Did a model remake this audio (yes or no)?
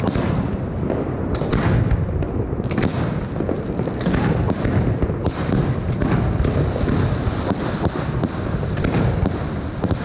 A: no